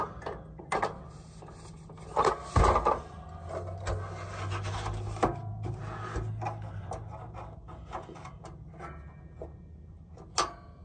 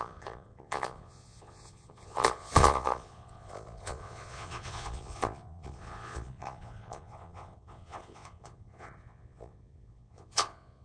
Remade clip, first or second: second